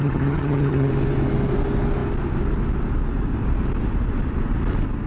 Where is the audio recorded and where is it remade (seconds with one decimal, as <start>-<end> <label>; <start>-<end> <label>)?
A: 0.0-0.9 remade; 0.9-5.1 recorded